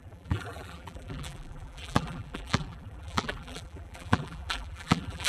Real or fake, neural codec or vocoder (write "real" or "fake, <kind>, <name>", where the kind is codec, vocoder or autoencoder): fake, vocoder, BigVGAN v2